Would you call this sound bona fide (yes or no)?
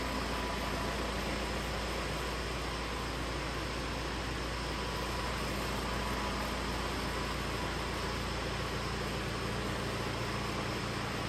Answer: yes